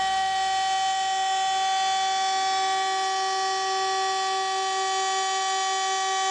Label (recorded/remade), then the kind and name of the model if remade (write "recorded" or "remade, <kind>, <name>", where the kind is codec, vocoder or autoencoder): recorded